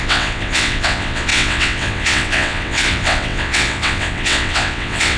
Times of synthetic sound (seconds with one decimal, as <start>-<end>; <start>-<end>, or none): 0.0-5.2